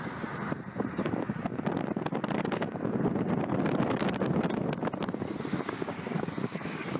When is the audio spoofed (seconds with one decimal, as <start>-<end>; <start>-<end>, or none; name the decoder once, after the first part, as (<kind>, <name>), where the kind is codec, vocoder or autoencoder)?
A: 5.5-7.0 (codec, DAC)